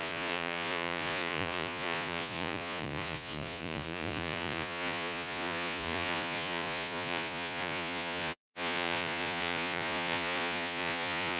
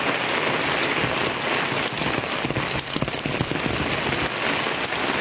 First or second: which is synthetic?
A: first